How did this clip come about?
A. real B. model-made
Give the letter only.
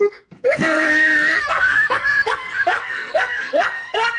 B